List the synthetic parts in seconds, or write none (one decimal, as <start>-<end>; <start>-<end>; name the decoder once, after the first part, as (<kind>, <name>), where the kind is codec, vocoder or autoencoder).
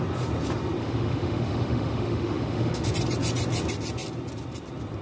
0.8-2.9 (autoencoder, DAC-VAE)